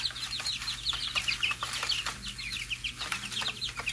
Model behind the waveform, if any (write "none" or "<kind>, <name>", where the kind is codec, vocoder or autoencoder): none